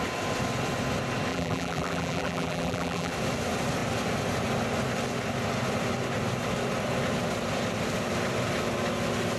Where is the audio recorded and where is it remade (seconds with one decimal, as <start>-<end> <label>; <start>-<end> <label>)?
0.0-1.3 recorded; 1.3-3.1 remade; 3.1-9.4 recorded